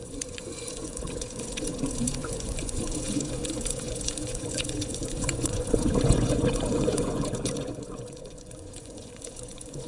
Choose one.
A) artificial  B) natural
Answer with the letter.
A